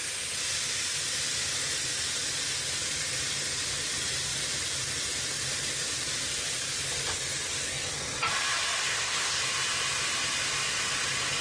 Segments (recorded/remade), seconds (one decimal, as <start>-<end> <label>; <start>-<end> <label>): 0.0-8.8 recorded; 8.8-9.4 remade; 9.4-11.4 recorded